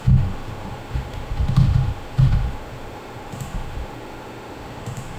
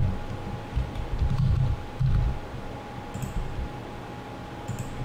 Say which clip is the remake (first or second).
first